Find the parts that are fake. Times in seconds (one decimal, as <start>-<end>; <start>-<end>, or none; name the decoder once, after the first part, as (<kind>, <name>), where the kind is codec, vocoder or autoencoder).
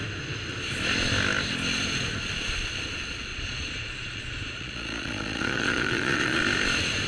3.3-6.4 (vocoder, Vocos)